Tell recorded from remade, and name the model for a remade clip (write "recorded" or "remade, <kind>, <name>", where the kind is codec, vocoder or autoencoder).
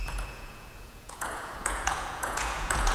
remade, vocoder, Vocos